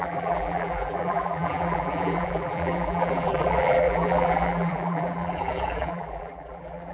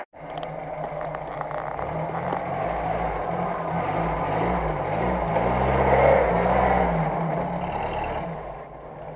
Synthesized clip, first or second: first